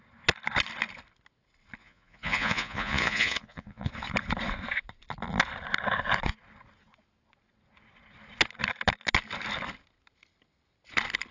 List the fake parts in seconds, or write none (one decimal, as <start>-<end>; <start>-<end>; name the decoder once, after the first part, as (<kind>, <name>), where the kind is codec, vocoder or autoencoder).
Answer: 1.8-3.9 (vocoder, Vocos)